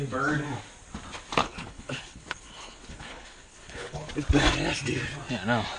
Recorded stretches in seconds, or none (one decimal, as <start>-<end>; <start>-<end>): 0.0-1.4; 4.1-5.8